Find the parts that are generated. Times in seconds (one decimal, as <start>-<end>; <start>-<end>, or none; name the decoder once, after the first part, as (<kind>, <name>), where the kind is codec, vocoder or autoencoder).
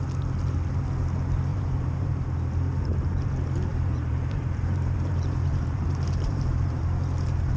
1.5-2.1 (vocoder, BigVGAN v2); 3.7-6.8